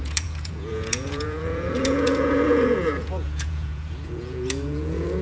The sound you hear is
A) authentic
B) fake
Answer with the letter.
B